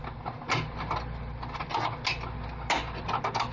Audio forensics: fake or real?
real